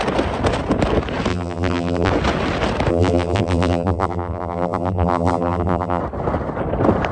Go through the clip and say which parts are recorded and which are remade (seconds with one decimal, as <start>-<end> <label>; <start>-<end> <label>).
0.0-1.3 recorded; 1.3-2.1 remade; 2.1-2.9 recorded; 2.9-6.0 remade; 6.0-7.1 recorded

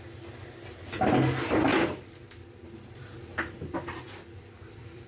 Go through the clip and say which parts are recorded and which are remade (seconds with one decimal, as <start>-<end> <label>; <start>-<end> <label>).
0.0-1.7 recorded; 1.7-5.1 remade

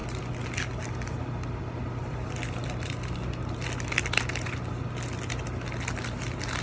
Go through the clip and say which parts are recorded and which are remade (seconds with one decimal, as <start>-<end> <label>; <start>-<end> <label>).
0.0-6.6 recorded

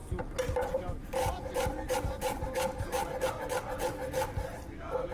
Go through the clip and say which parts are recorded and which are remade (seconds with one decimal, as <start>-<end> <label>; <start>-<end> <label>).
0.0-3.1 remade; 3.1-5.1 recorded

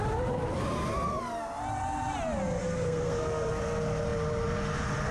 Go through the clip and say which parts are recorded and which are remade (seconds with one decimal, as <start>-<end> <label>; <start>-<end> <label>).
0.0-2.6 recorded; 2.6-3.6 remade; 3.6-5.1 recorded

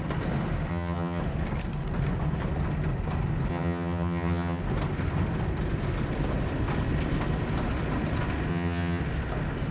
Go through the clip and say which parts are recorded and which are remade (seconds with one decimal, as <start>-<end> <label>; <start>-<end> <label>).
0.0-0.7 recorded; 0.7-1.2 remade; 1.2-3.5 recorded; 3.5-4.6 remade; 4.6-8.5 recorded; 8.5-9.0 remade; 9.0-9.7 recorded